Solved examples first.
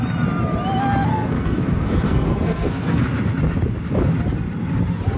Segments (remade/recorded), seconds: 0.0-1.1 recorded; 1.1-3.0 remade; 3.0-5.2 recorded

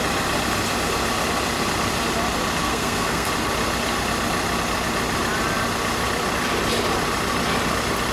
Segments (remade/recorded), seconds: 0.0-2.6 recorded; 2.6-3.3 remade; 3.3-8.1 recorded

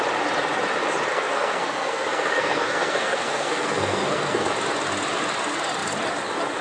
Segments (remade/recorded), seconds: 0.0-1.1 recorded; 1.1-4.5 remade; 4.5-6.6 recorded

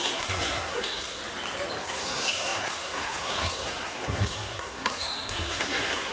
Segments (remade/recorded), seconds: 0.0-1.2 remade; 1.2-1.8 recorded; 1.8-6.1 remade

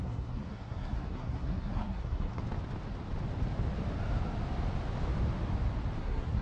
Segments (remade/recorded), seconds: 0.0-2.4 remade; 2.4-6.0 recorded; 6.0-6.4 remade

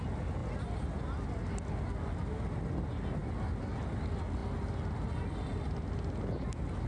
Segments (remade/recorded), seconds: 0.0-6.9 recorded

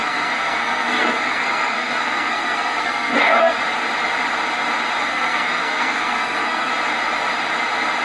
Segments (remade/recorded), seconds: 0.0-3.6 remade; 3.6-5.0 recorded; 5.0-6.7 remade; 6.7-8.0 recorded

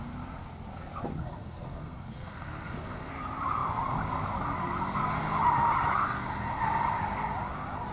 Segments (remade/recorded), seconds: 0.0-1.2 recorded; 1.2-3.1 remade; 3.1-7.9 recorded